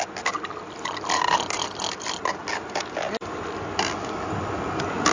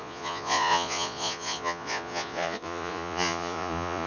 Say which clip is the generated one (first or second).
second